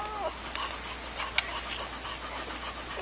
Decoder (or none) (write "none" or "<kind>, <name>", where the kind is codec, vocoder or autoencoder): none